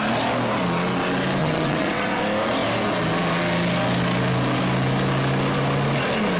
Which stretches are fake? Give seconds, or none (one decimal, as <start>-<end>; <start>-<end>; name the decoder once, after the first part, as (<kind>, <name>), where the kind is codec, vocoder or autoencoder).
1.4-2.2 (vocoder, WaveNeXt)